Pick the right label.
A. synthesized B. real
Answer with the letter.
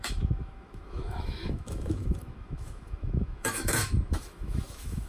A